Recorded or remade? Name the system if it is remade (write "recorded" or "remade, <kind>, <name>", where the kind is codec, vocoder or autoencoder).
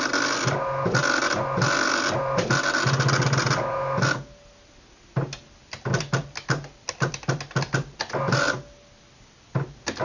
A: recorded